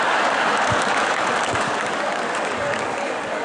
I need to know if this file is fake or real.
fake